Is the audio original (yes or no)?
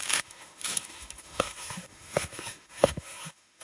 no